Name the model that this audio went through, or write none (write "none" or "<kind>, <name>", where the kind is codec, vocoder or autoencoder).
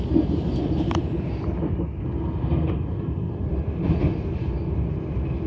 none